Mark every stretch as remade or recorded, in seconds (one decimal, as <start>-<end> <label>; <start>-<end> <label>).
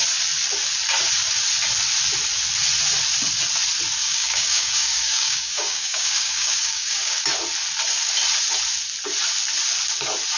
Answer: 0.0-4.0 recorded; 4.0-7.2 remade; 7.2-10.4 recorded